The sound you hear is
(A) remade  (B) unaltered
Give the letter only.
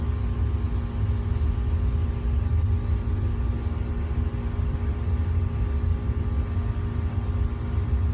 B